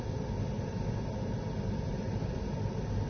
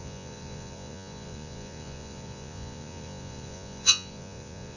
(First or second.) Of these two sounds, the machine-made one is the second